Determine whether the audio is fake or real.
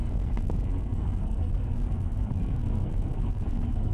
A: fake